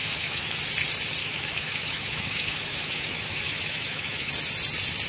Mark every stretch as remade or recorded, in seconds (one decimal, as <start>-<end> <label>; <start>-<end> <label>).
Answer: 0.0-0.6 remade; 0.6-1.2 recorded; 1.2-4.3 remade; 4.3-5.1 recorded